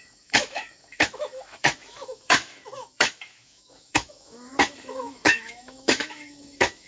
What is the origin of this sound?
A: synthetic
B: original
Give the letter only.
A